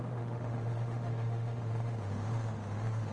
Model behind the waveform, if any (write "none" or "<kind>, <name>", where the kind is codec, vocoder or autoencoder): autoencoder, DAC-VAE